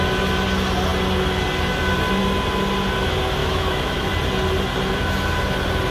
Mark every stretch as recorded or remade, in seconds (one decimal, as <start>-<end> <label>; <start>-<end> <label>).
0.0-3.4 recorded; 3.4-4.1 remade; 4.1-5.9 recorded